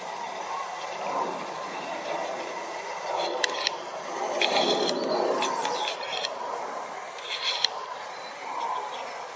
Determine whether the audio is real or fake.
real